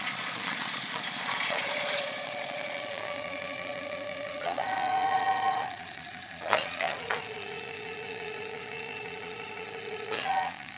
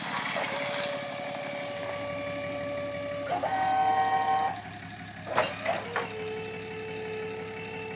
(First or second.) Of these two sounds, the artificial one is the first